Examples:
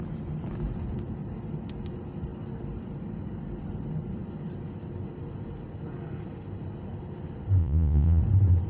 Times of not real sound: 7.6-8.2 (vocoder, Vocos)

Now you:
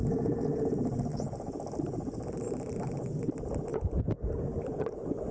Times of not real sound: 3.7-4.2 (vocoder, Vocos)

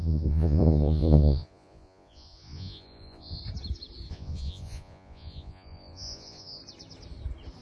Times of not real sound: 0.0-3.4 (vocoder, Vocos); 4.1-6.6